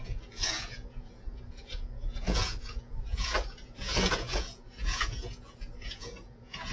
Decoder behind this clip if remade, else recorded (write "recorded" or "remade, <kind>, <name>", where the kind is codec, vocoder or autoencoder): remade, vocoder, Vocos